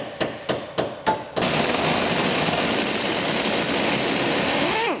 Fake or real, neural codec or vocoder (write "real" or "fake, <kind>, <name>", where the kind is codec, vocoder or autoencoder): real